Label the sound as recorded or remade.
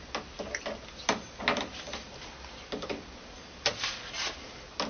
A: recorded